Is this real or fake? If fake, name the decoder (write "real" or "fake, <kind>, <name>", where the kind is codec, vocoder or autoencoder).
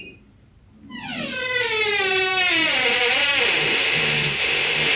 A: fake, vocoder, BigVGAN v2